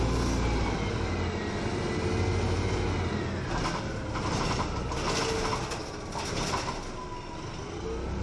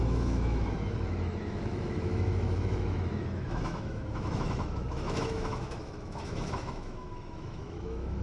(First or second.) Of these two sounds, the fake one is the second